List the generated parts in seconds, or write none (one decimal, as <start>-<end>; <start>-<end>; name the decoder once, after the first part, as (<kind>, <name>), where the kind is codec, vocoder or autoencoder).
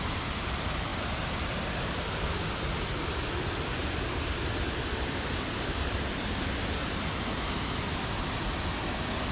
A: none